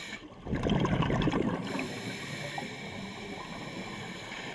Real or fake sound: real